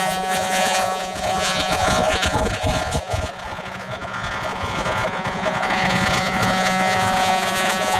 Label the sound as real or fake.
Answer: fake